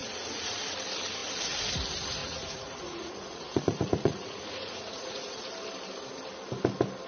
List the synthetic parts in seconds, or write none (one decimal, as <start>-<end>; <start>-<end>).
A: 0.0-0.6; 2.2-5.5